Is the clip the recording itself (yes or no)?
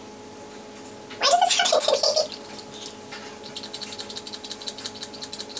yes